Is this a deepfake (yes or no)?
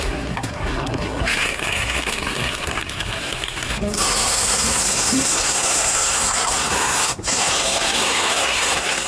yes